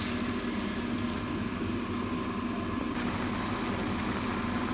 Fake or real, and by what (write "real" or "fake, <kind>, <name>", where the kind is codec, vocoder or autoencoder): real